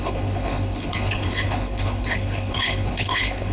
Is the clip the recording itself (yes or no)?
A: no